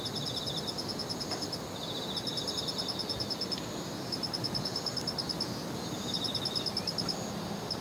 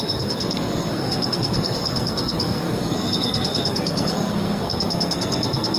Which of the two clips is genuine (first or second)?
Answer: first